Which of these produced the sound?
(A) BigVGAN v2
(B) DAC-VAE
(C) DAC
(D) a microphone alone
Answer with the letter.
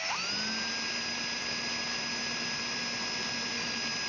D